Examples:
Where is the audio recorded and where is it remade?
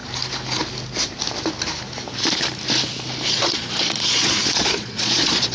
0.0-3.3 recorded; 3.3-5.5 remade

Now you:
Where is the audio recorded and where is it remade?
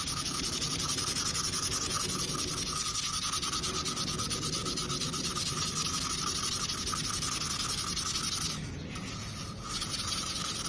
0.0-4.6 remade; 4.6-8.7 recorded; 8.7-10.7 remade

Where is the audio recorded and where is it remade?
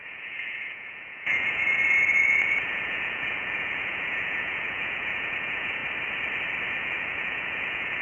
0.0-5.8 remade; 5.8-6.7 recorded; 6.7-8.0 remade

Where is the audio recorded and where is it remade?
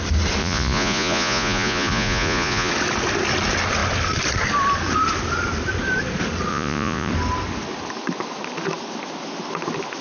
0.0-0.4 recorded; 0.4-2.7 remade; 2.7-6.5 recorded; 6.5-7.1 remade; 7.1-10.0 recorded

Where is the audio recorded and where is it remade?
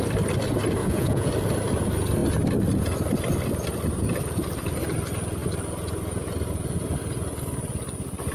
0.0-0.8 recorded; 0.8-1.3 remade; 1.3-8.3 recorded